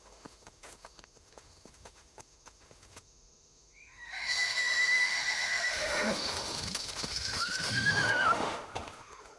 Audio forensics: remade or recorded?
remade